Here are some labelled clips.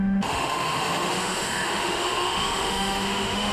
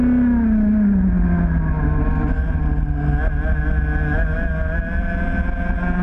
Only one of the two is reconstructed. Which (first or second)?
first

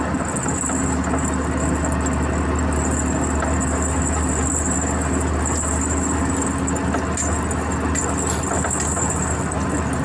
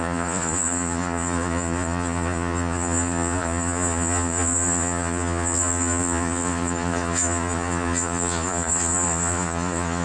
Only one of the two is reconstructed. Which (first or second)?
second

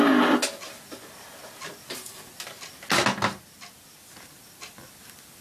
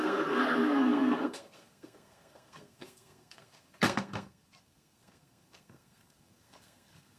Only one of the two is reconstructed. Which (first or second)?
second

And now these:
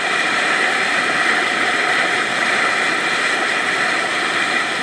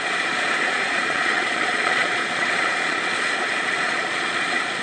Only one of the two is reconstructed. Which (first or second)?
second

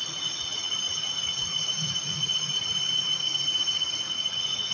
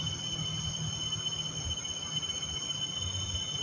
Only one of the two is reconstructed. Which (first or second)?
first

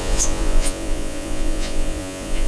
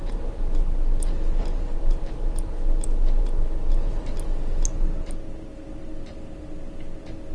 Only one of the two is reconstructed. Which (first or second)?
first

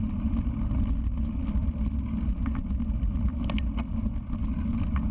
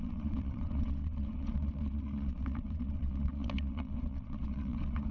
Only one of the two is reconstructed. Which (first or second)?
second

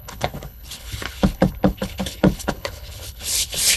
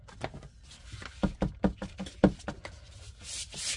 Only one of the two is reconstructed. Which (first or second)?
first